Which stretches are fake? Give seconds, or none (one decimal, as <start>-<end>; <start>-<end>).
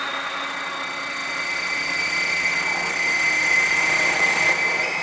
1.2-2.5; 3.4-4.4